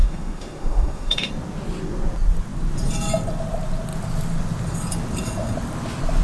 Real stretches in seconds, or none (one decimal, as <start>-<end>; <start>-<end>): 1.3-6.2